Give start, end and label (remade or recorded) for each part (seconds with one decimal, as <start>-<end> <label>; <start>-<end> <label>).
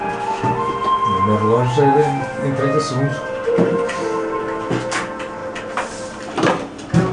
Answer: 0.0-3.1 recorded; 3.1-4.4 remade; 4.4-5.4 recorded; 5.4-6.5 remade; 6.5-7.1 recorded